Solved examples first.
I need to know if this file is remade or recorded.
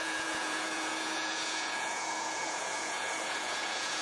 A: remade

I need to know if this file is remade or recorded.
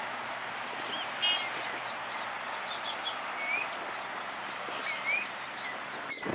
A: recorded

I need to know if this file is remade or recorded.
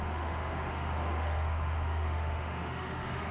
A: remade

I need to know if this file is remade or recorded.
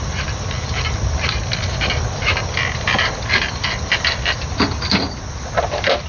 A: recorded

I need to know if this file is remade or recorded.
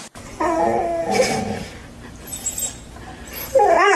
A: recorded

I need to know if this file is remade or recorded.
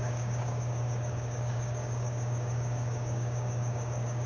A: remade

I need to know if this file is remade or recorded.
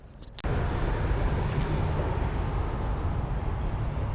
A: recorded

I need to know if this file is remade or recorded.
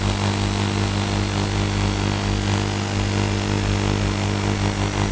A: recorded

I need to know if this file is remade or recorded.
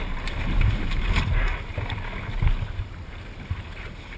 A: recorded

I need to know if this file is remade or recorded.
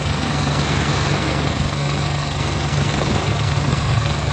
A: remade